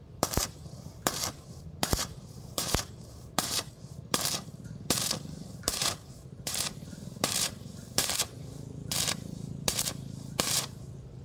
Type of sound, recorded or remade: remade